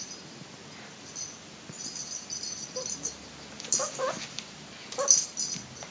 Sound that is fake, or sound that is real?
real